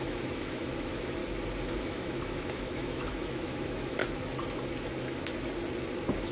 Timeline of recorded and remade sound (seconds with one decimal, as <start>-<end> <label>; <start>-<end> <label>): 0.0-1.2 remade; 1.2-1.8 recorded; 1.8-4.0 remade; 4.0-6.3 recorded